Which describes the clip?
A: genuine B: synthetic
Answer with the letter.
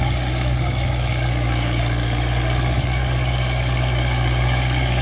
B